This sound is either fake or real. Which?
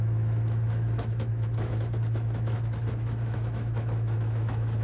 fake